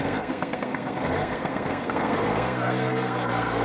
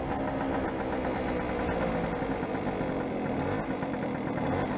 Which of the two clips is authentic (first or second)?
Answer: second